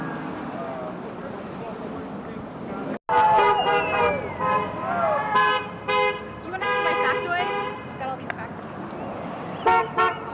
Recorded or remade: recorded